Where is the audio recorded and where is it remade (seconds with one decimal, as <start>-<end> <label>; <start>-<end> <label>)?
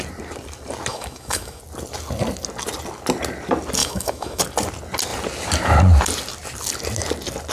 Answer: 0.0-0.9 recorded; 0.9-1.6 remade; 1.6-3.8 recorded; 3.8-4.4 remade; 4.4-7.5 recorded